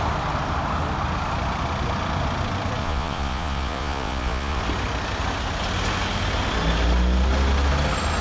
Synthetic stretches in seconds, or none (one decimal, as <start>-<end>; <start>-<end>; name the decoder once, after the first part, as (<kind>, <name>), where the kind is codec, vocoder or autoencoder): 2.8-4.6 (vocoder, Vocos)

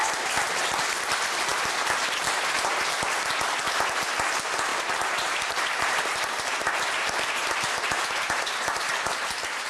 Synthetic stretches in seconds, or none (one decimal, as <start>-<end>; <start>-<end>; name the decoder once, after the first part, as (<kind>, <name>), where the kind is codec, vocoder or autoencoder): 4.7-9.7 (vocoder, BigVGAN v2)

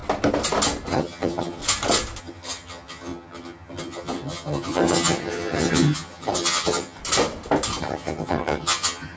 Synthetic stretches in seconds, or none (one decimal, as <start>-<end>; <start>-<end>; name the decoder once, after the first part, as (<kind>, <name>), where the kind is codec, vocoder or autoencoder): 0.9-1.6 (vocoder, HiFi-GAN); 2.2-7.0; 7.8-9.2

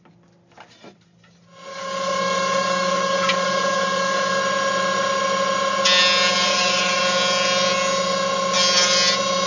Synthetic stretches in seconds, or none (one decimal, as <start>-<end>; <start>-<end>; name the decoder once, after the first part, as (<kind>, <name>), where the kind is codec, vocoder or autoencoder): 1.7-4.4 (codec, DAC); 6.5-7.0

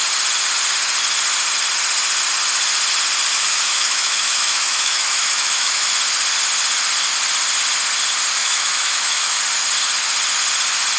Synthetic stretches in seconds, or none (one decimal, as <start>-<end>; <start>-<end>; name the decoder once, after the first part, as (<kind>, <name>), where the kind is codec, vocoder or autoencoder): 3.3-5.9 (autoencoder, DAC-VAE); 8.4-9.4